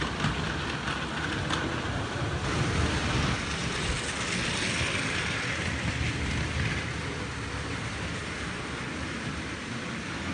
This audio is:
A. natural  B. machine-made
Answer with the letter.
A